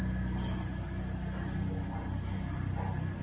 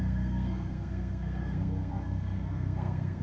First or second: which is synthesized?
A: second